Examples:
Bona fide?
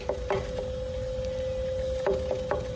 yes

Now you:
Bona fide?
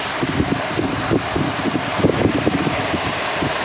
yes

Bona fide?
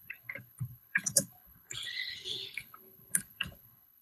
no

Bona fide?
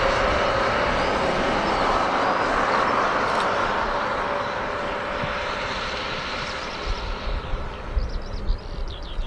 yes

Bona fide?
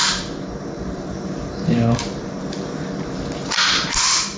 no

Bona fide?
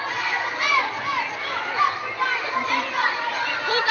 yes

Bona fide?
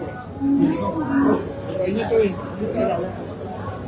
yes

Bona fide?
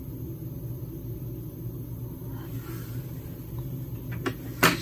yes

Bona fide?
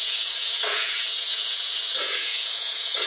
no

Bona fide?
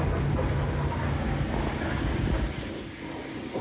yes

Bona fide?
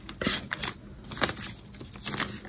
yes